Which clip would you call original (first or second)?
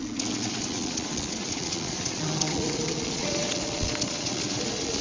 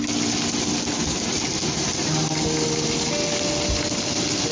second